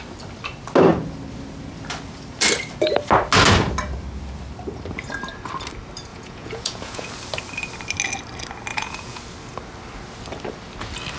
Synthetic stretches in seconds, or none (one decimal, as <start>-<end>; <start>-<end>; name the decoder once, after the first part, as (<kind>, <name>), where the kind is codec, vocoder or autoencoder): 6.1-7.1 (vocoder, Vocos); 8.7-9.2